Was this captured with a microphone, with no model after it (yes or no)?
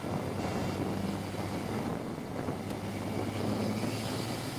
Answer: yes